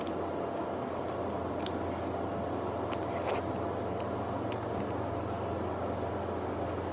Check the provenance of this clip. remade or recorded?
recorded